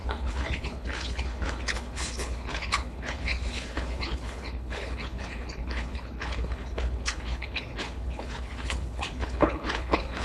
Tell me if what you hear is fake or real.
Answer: fake